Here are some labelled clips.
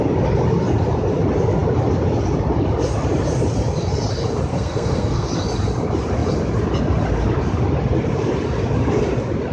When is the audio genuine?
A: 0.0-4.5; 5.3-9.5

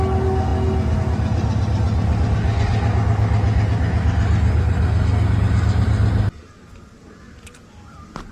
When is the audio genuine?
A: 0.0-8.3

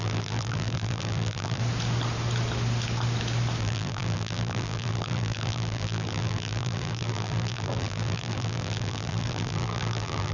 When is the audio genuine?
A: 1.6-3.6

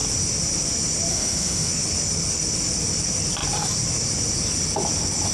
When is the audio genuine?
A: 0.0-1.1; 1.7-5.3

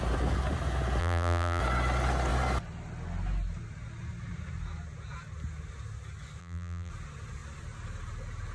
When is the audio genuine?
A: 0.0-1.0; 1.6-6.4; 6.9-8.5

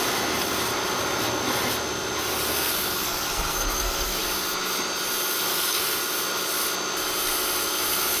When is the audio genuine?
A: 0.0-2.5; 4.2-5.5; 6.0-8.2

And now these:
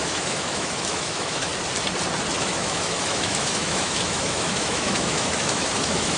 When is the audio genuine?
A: 1.5-2.4